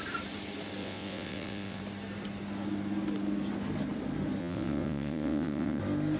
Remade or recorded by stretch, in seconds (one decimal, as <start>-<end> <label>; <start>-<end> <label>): 0.0-0.8 recorded; 0.8-1.8 remade; 1.8-4.4 recorded; 4.4-5.8 remade; 5.8-6.2 recorded